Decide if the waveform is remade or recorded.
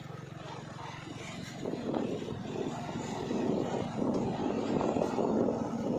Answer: recorded